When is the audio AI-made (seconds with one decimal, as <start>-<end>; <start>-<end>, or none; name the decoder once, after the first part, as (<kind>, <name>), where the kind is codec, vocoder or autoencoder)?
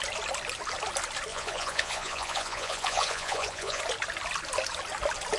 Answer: 1.3-3.8 (vocoder, Vocos)